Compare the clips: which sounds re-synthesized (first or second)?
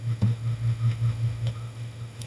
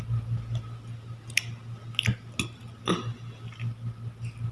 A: first